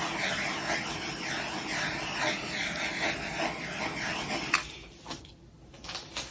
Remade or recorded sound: recorded